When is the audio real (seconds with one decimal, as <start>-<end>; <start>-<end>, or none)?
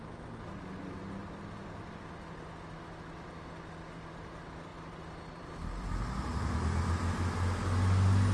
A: 0.0-8.3